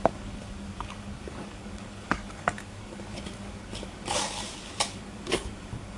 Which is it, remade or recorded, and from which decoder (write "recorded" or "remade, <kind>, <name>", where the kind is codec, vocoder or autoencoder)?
remade, codec, DAC